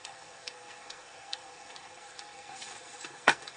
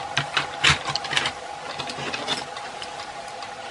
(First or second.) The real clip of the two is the second